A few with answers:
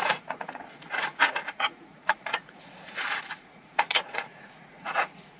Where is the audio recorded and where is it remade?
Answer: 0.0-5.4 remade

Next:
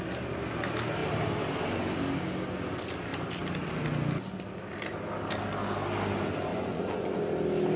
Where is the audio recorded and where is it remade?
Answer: 0.0-6.5 recorded; 6.5-7.2 remade; 7.2-7.8 recorded

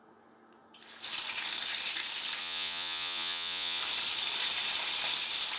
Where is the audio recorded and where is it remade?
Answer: 0.0-2.4 recorded; 2.4-3.8 remade; 3.8-5.6 recorded

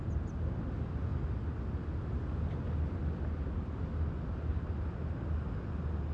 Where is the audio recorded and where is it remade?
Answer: 0.0-6.1 recorded